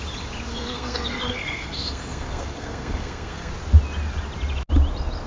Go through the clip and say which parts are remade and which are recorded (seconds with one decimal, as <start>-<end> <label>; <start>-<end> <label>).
0.0-0.5 recorded; 0.5-3.5 remade; 3.5-5.3 recorded